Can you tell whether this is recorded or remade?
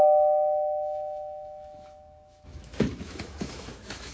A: remade